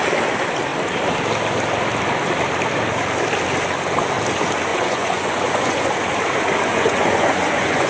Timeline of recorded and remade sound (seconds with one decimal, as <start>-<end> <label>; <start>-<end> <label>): 0.0-4.7 recorded; 4.7-5.8 remade; 5.8-6.7 recorded; 6.7-7.9 remade